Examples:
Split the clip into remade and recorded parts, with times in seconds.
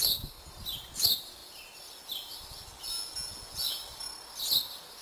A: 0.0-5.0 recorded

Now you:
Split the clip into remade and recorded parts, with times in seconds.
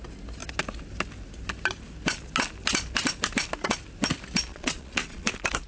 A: 0.0-4.5 recorded; 4.5-5.3 remade; 5.3-5.7 recorded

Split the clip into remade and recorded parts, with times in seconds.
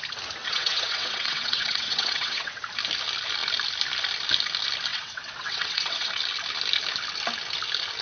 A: 0.0-0.4 recorded; 0.4-2.6 remade; 2.6-4.9 recorded; 4.9-6.1 remade; 6.1-8.0 recorded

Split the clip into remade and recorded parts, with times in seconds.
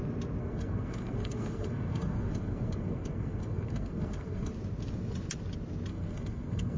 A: 0.0-0.4 recorded; 0.4-4.5 remade; 4.5-5.9 recorded; 5.9-6.8 remade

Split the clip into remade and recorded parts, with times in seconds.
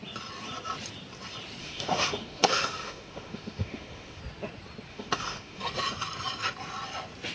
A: 0.0-1.6 recorded; 1.6-4.2 remade; 4.2-4.9 recorded; 4.9-5.6 remade; 5.6-7.3 recorded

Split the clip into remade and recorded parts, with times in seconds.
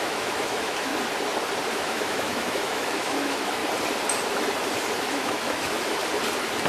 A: 0.0-0.9 remade; 0.9-1.7 recorded; 1.7-3.6 remade; 3.6-5.0 recorded; 5.0-6.0 remade; 6.0-6.7 recorded